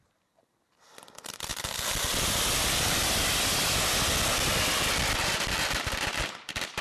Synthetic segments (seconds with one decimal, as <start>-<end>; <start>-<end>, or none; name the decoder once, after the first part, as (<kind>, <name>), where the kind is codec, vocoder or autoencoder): 1.5-3.0 (vocoder, BigVGAN v2)